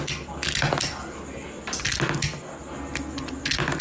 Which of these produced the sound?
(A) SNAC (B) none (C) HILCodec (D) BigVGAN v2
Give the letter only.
B